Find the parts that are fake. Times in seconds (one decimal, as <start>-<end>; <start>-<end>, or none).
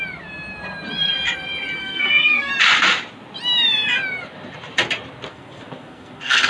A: 1.8-2.5; 5.3-6.5